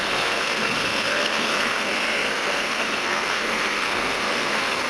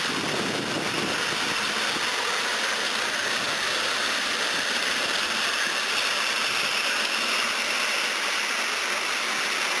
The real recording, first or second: second